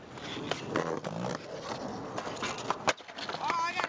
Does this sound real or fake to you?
real